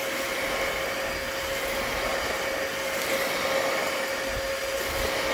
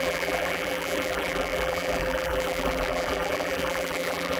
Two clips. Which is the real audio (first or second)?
first